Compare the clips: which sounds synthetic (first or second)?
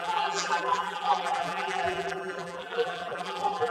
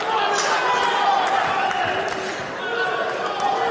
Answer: first